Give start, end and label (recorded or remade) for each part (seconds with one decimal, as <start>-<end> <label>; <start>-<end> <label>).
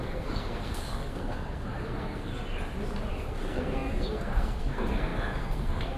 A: 0.0-2.3 remade; 2.3-3.1 recorded; 3.1-6.0 remade